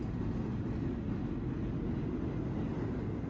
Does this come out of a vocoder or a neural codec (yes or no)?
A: no